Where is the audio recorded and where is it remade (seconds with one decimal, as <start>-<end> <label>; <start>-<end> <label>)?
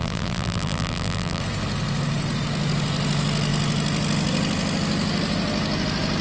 0.0-1.4 remade; 1.4-6.2 recorded